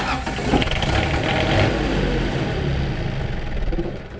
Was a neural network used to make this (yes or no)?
no